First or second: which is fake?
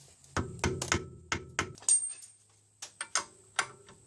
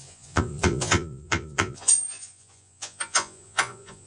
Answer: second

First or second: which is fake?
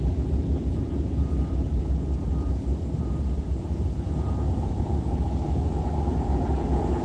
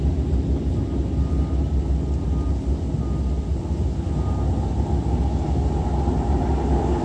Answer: first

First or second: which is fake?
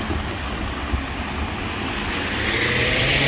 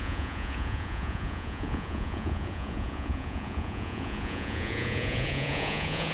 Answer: second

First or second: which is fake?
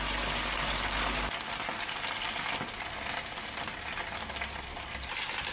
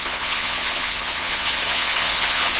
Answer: second